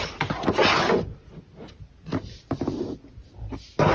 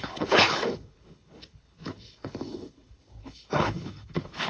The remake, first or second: second